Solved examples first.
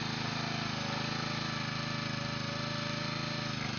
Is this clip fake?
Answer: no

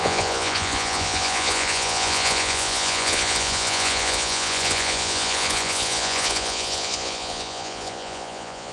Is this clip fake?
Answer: yes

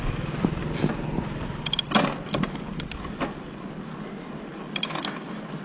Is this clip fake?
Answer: no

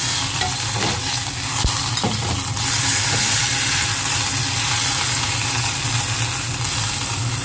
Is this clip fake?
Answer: no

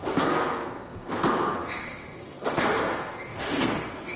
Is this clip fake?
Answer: yes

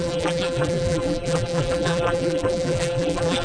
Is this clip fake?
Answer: yes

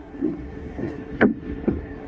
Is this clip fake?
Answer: yes